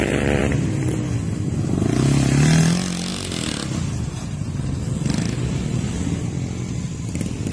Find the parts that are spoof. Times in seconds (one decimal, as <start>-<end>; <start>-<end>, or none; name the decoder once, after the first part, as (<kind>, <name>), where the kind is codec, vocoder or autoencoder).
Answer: none